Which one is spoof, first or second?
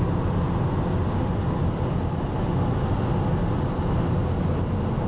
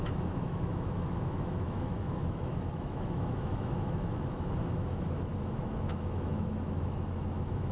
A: second